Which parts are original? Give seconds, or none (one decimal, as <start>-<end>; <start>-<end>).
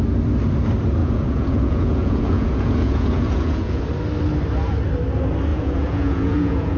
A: 0.0-1.0; 3.8-5.5